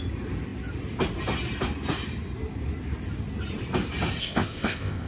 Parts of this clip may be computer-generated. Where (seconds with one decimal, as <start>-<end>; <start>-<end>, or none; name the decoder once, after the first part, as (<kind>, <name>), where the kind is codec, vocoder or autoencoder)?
4.2-5.1 (codec, ZipCodec)